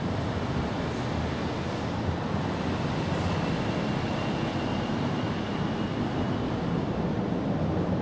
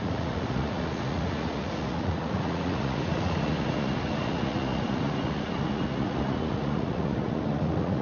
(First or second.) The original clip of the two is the first